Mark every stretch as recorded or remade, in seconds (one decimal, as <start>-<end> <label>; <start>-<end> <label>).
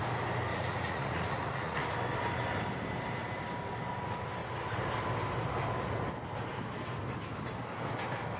0.0-0.5 recorded; 0.5-1.9 remade; 1.9-8.4 recorded